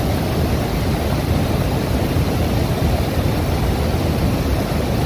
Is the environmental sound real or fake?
real